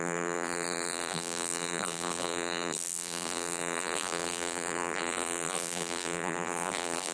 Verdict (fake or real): fake